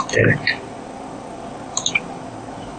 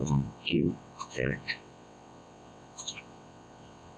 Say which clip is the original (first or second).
first